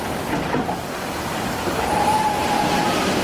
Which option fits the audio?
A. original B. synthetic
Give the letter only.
A